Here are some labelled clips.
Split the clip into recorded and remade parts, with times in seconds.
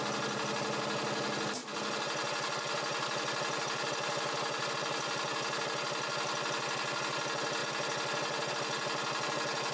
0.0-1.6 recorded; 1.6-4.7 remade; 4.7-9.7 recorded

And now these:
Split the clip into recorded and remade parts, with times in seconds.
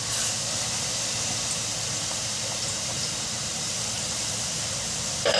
0.0-1.7 recorded; 1.7-4.9 remade; 4.9-5.4 recorded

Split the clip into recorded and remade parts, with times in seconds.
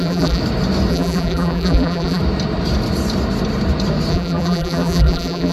0.0-0.4 remade; 0.4-0.9 recorded; 0.9-2.2 remade; 2.2-4.1 recorded; 4.1-5.5 remade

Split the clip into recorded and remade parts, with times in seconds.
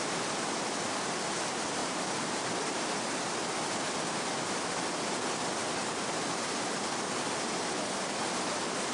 0.0-1.8 recorded; 1.8-2.5 remade; 2.5-8.9 recorded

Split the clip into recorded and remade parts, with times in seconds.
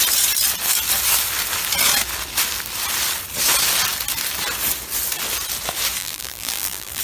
0.0-6.0 recorded; 6.0-7.0 remade